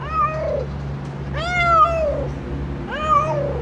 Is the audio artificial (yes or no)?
no